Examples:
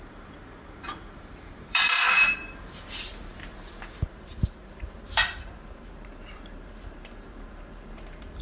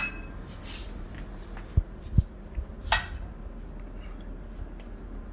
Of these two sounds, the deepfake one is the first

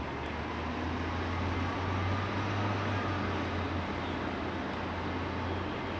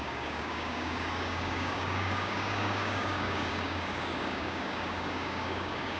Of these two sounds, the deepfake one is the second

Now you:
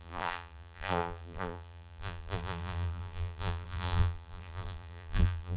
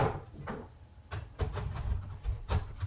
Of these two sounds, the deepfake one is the first